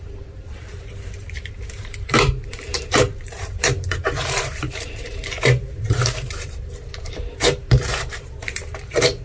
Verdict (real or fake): fake